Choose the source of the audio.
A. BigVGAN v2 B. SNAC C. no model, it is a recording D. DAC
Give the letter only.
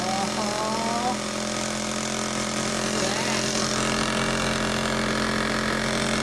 C